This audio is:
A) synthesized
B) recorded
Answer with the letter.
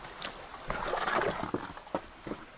B